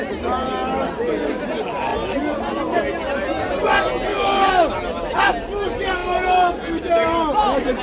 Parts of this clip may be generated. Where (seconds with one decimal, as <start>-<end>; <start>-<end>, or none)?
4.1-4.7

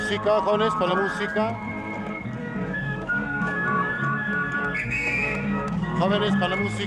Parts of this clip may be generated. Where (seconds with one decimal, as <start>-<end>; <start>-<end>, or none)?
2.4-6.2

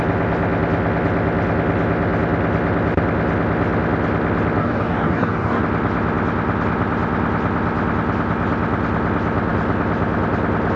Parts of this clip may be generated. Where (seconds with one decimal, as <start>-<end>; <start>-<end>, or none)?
4.6-5.6

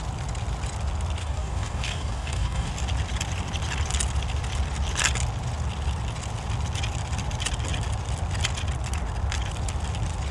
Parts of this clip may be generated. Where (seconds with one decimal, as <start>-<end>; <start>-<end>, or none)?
1.2-2.7

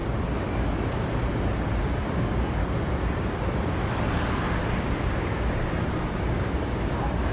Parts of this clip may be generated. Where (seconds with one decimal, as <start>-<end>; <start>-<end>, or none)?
1.7-2.6; 4.8-7.3

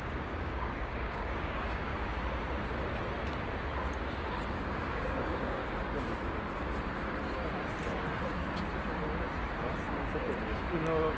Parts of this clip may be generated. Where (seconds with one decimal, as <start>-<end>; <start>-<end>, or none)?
0.0-1.9; 4.5-5.6